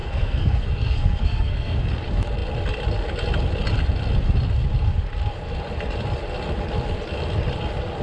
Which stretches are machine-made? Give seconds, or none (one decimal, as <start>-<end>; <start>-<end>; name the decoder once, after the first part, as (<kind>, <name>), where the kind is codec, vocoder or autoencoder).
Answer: 0.0-1.8 (codec, SNAC)